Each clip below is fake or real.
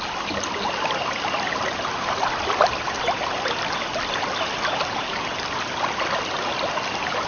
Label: real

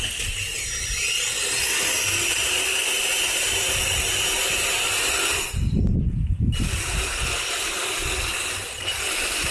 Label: real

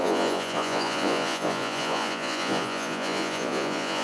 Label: fake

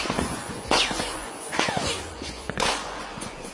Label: fake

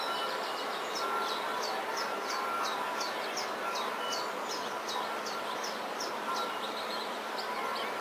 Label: real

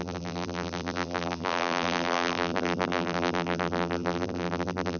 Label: fake